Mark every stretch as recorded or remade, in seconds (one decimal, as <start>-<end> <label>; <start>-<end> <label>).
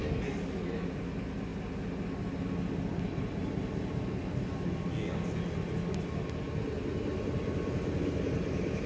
0.0-8.9 recorded